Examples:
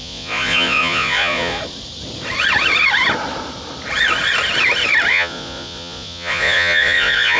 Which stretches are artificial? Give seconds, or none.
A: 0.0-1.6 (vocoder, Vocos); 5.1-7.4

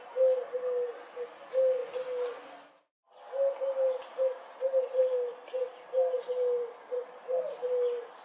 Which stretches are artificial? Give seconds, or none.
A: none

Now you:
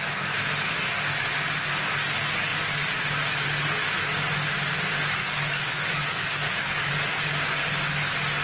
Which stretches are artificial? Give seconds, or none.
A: 5.2-6.9 (codec, DAC)

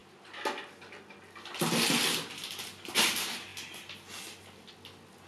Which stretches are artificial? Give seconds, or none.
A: none